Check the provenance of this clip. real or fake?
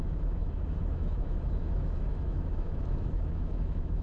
fake